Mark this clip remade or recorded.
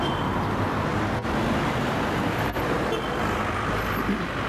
recorded